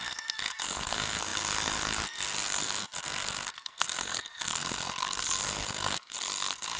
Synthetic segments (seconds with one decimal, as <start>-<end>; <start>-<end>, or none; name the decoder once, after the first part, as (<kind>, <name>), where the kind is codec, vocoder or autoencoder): 0.0-6.8 (codec, SNAC)